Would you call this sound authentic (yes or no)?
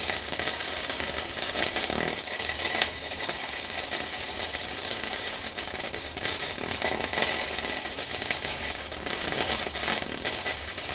no